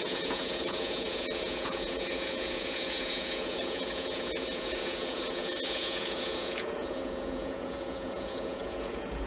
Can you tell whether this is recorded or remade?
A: remade